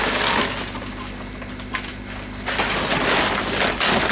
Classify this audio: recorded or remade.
recorded